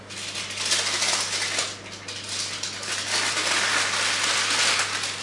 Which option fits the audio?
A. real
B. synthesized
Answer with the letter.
A